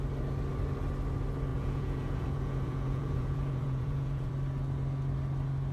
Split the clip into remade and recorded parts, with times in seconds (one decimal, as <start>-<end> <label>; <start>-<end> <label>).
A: 0.0-1.5 recorded; 1.5-4.3 remade; 4.3-5.7 recorded